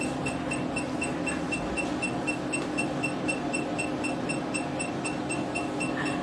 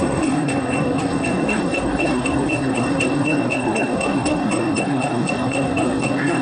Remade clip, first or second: second